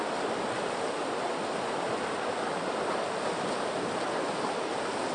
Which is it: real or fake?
real